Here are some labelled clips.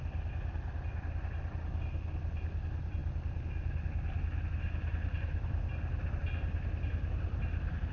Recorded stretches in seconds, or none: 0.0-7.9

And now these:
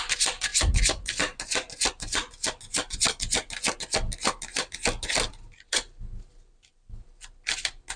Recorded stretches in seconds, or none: 0.0-8.0

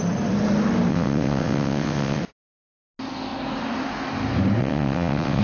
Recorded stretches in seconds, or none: 0.0-0.9; 2.2-4.6